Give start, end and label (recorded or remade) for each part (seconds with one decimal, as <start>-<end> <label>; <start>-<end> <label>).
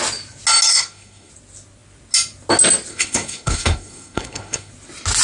0.0-0.7 recorded; 0.7-1.3 remade; 1.3-2.9 recorded; 2.9-4.7 remade; 4.7-5.2 recorded